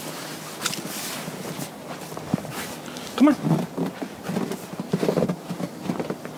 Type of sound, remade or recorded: recorded